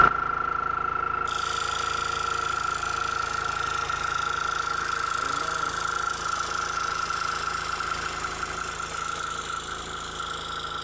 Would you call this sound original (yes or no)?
yes